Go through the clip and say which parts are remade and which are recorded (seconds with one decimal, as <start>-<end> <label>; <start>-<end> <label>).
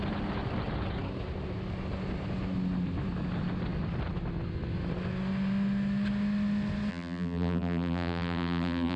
0.0-6.9 recorded; 6.9-9.0 remade